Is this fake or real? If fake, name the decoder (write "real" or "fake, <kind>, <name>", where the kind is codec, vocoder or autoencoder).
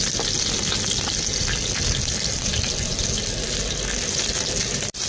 real